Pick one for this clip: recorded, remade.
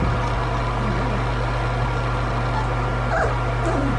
recorded